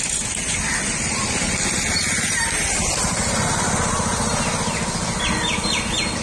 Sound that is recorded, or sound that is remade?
recorded